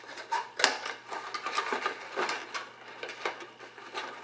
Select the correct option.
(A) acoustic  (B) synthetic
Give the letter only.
A